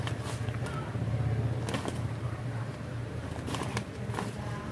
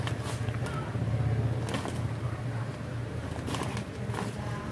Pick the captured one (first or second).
second